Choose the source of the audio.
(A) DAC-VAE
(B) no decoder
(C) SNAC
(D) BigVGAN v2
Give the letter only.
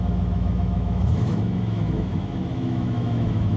A